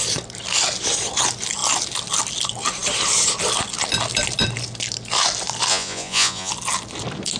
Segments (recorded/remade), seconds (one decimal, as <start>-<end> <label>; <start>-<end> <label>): 0.0-5.7 recorded; 5.7-6.5 remade; 6.5-7.4 recorded